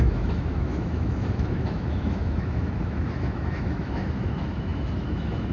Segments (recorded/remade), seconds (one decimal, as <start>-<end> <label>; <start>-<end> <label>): 0.0-5.5 remade